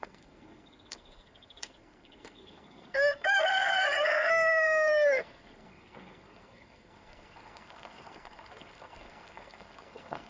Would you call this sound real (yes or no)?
no